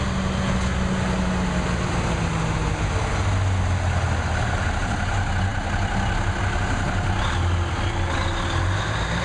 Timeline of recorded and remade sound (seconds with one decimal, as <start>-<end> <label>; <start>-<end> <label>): 0.0-9.2 recorded